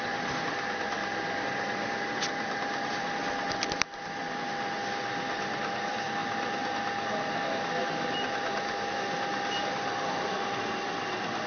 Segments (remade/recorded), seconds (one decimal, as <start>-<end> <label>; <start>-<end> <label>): 0.0-6.2 remade; 6.2-9.6 recorded; 9.6-11.5 remade